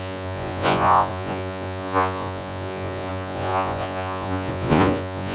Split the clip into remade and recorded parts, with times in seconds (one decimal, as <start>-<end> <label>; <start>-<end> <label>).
0.0-5.3 remade